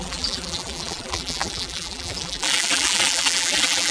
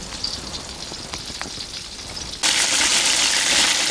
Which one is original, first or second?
second